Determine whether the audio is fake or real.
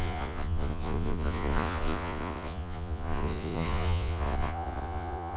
fake